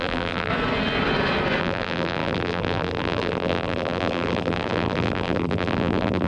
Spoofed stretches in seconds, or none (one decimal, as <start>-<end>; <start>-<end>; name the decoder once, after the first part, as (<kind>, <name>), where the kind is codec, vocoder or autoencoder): 0.0-0.5 (vocoder, BigVGAN v2); 1.6-6.3